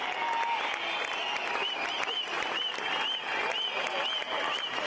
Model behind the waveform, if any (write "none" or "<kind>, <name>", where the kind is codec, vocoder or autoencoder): none